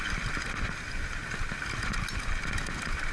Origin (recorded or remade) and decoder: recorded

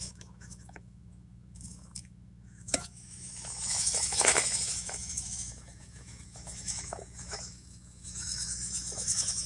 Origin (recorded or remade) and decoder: remade, autoencoder, DAC-VAE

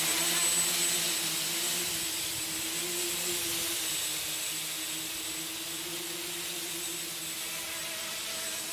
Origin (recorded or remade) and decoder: recorded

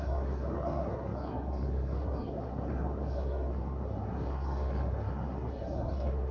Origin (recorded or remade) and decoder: remade, codec, SNAC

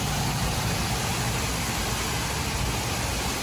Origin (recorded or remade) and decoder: recorded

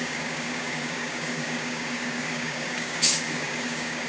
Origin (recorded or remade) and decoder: remade, codec, DAC